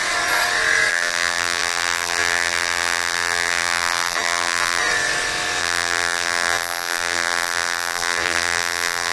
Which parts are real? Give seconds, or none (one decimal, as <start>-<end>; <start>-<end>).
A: 0.0-0.9; 4.8-5.6